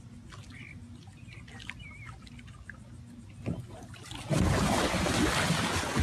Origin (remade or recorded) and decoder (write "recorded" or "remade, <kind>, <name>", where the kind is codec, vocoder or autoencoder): recorded